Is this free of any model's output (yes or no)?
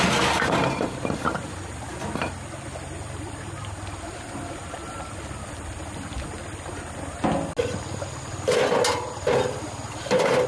yes